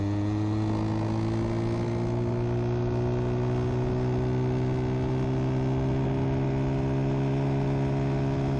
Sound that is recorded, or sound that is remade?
recorded